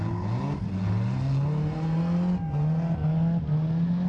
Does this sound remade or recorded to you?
recorded